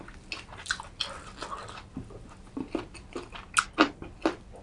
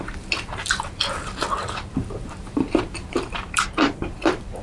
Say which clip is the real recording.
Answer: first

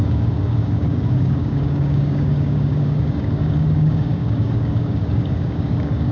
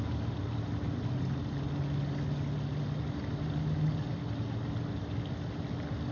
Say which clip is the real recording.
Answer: second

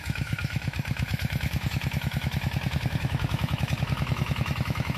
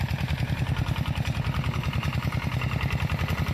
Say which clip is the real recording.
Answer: second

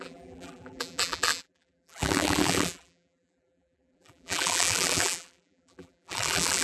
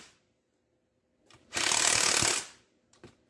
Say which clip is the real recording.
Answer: second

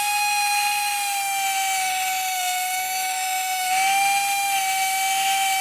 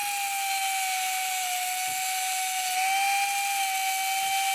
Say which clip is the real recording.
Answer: second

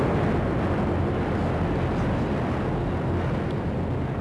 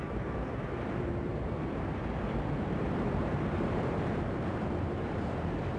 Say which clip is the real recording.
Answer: first